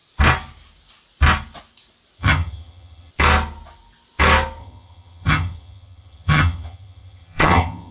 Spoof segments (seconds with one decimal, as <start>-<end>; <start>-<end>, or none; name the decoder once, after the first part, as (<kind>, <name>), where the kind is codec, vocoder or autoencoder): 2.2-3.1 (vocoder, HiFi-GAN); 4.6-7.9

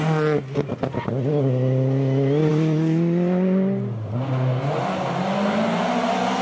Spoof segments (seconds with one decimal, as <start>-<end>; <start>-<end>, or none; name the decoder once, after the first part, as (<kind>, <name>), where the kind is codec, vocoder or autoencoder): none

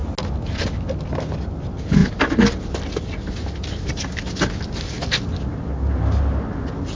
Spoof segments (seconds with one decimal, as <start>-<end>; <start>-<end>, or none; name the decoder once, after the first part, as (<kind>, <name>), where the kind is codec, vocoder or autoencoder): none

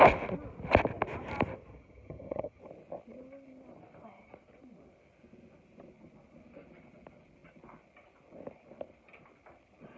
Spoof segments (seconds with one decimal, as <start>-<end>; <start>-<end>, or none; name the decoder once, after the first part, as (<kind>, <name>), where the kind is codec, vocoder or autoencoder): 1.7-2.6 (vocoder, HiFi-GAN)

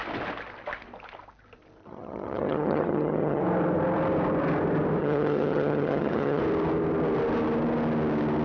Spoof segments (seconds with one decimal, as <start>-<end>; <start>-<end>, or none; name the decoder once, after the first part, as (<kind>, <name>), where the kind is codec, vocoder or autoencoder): 1.8-3.4 (vocoder, HiFi-GAN); 5.0-6.4

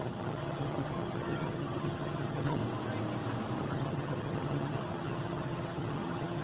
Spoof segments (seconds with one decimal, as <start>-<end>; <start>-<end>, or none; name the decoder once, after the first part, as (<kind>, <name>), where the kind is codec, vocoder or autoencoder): 0.0-2.6 (vocoder, HiFi-GAN); 3.6-6.4

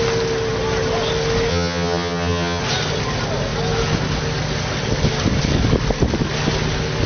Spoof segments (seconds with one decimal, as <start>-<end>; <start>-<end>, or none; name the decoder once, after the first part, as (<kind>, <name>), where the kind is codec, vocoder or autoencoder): 1.5-2.6 (vocoder, HiFi-GAN)